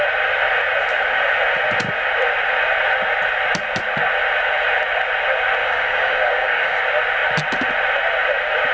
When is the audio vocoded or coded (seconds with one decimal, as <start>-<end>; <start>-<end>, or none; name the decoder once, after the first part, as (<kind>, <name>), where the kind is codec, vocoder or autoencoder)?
5.6-6.8 (codec, DAC)